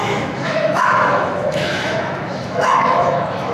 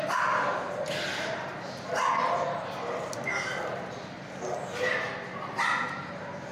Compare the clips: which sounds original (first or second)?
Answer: second